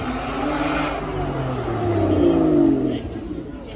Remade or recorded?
recorded